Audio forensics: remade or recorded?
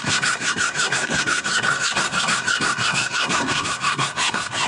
remade